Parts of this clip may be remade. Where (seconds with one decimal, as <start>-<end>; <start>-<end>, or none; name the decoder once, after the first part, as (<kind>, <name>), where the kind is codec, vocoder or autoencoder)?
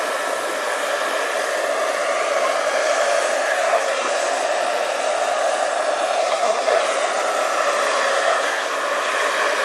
3.5-4.1 (codec, SNAC); 6.2-6.8; 8.1-8.7